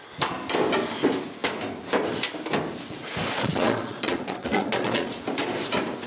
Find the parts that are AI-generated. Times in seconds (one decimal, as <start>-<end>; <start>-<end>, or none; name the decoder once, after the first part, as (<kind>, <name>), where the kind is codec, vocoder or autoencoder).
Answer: 3.4-5.1 (vocoder, Vocos)